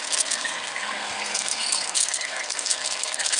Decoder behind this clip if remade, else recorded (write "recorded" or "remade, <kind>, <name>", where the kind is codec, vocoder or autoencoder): remade, codec, SNAC